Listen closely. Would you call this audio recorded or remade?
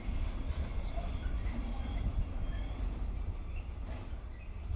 recorded